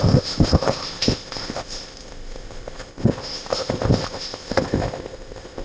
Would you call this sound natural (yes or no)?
no